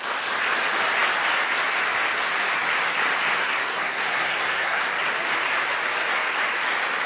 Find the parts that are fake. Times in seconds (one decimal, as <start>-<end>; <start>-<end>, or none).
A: 3.4-4.8